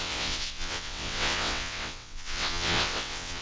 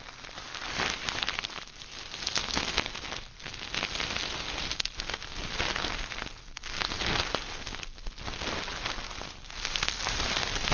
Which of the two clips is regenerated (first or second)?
first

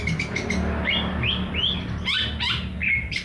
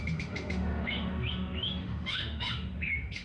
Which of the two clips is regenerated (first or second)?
second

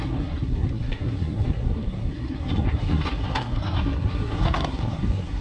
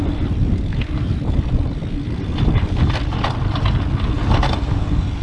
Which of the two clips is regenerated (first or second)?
first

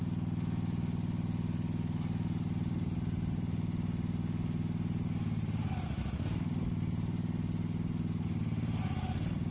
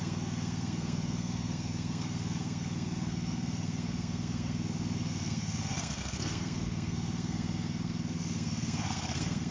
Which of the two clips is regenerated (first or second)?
second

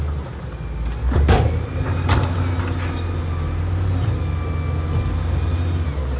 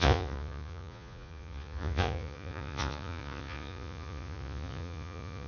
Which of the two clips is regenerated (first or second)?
second